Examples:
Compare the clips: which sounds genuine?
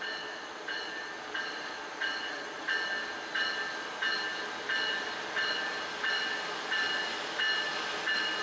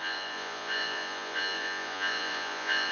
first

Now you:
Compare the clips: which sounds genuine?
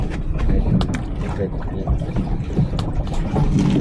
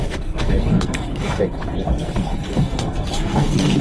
first